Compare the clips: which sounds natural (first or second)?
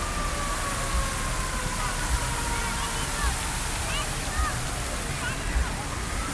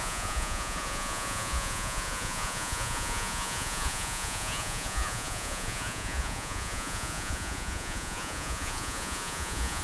first